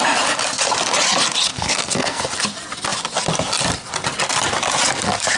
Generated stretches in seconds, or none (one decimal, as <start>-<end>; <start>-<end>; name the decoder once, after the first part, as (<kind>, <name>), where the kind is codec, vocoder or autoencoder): 1.5-2.2 (codec, SNAC)